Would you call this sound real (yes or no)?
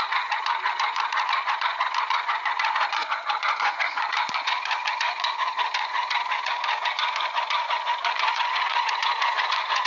no